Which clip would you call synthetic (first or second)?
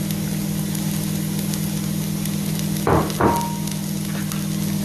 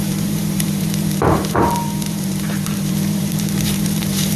second